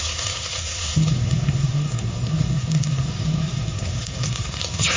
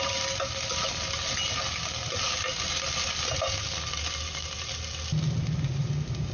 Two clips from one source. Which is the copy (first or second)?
first